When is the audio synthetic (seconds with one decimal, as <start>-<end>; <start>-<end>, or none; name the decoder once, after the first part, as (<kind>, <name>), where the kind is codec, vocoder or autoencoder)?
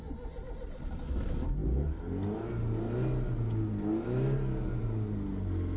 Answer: none